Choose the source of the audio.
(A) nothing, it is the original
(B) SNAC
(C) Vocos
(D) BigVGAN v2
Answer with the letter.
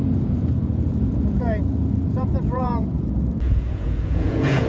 C